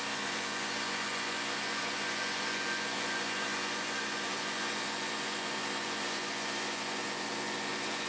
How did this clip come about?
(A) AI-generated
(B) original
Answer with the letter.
A